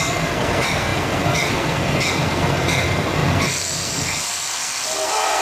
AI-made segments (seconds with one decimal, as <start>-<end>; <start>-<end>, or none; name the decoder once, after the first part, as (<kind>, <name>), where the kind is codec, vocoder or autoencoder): 0.0-5.4 (codec, SNAC)